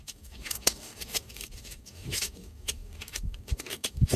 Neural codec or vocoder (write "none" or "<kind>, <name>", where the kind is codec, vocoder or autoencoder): codec, DAC